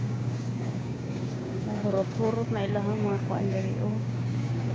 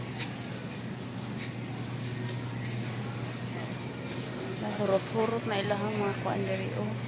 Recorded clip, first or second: second